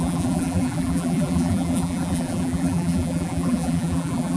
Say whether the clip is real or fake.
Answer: fake